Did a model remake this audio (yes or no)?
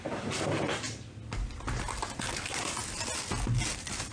no